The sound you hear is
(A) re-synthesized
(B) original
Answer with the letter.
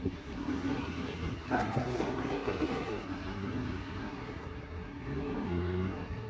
A